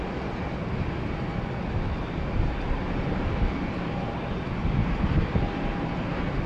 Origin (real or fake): real